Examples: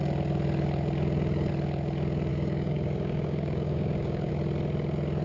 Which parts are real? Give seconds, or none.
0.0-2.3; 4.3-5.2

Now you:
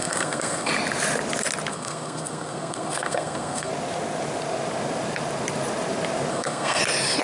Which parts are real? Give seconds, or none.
0.7-1.7; 3.7-6.3; 6.8-7.2